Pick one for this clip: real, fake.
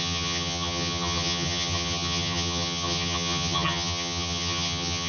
fake